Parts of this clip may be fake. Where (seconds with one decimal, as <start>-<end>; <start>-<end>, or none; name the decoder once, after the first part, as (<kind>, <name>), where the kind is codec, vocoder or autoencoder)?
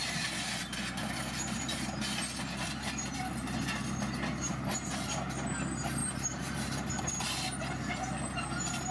6.0-7.2 (vocoder, BigVGAN v2)